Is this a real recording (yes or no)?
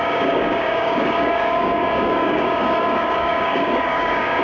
no